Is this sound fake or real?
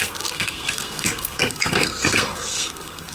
fake